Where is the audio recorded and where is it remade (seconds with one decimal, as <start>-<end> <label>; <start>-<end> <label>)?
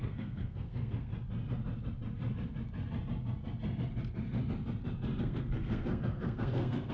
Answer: 0.0-1.1 remade; 1.1-5.2 recorded; 5.2-6.9 remade